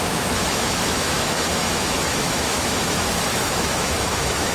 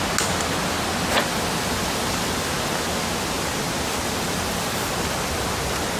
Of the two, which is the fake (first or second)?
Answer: first